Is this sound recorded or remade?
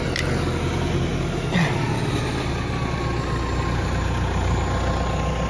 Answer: recorded